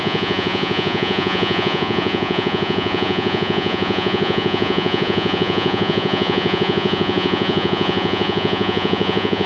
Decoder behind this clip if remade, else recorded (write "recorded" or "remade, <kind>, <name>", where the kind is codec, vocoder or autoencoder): remade, vocoder, Vocos